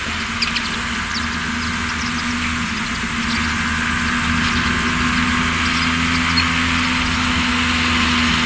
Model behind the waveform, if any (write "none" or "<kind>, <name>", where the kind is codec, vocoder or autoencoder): none